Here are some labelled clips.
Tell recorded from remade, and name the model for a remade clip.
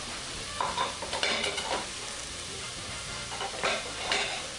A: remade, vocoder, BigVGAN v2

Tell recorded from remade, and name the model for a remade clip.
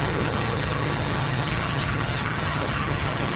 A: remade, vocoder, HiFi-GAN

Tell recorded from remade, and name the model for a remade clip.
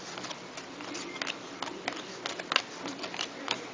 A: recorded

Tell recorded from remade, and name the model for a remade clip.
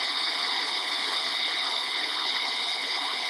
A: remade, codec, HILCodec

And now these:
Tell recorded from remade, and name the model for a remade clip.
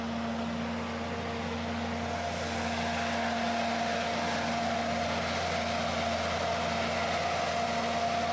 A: recorded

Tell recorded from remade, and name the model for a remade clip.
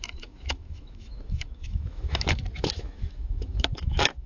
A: remade, autoencoder, DAC-VAE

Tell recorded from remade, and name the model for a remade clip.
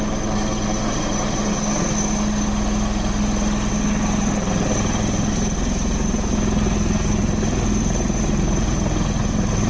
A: recorded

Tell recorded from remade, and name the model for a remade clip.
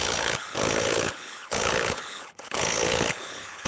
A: remade, codec, HILCodec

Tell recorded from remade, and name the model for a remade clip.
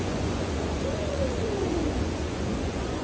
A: remade, vocoder, Vocos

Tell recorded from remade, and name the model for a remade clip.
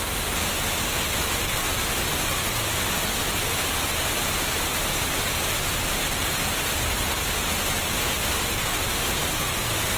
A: recorded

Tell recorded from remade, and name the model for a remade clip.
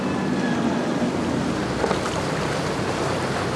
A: recorded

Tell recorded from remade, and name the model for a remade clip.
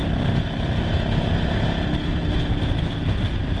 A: recorded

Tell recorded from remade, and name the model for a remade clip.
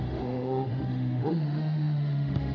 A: remade, autoencoder, DAC-VAE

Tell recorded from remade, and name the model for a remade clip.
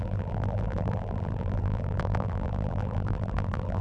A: remade, vocoder, BigVGAN v2